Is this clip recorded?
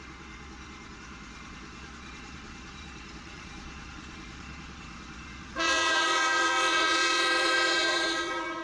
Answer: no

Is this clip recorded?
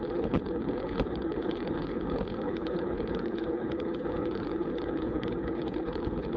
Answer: no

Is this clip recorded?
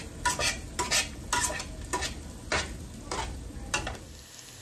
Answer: yes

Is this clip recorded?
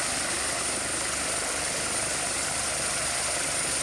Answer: yes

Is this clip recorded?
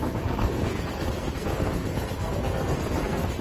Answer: no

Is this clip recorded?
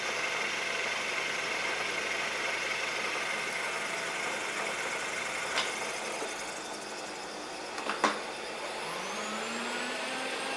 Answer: yes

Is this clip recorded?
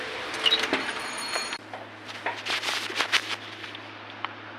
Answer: no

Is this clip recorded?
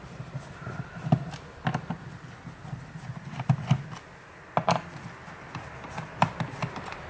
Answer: yes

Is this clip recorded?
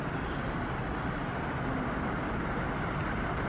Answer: yes